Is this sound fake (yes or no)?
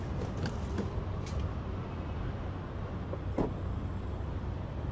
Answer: no